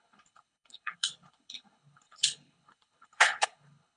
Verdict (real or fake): fake